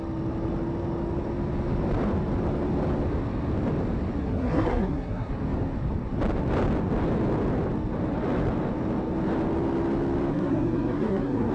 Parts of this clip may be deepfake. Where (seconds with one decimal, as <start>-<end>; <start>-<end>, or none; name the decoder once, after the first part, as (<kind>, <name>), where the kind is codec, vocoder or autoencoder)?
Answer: 4.2-5.3 (codec, SNAC); 10.3-11.5